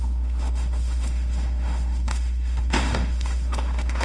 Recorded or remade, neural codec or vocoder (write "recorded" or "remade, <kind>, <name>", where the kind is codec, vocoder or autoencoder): remade, autoencoder, DAC-VAE